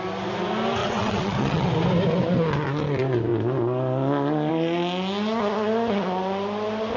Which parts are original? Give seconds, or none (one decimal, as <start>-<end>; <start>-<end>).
0.0-0.8; 1.7-7.0